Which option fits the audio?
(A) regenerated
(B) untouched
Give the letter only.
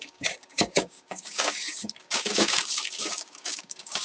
A